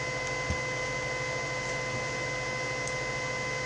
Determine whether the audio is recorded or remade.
recorded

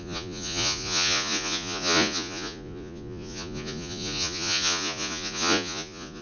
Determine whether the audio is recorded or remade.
remade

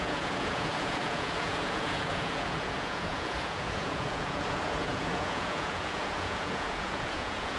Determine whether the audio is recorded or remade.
remade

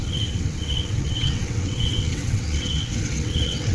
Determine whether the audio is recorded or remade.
remade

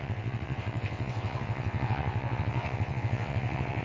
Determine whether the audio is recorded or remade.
remade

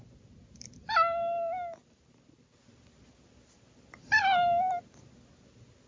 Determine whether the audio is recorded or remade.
recorded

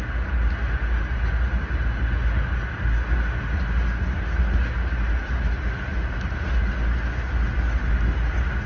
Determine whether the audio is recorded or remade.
recorded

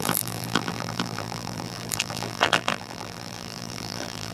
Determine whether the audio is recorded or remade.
remade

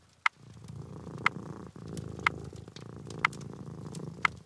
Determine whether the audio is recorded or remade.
recorded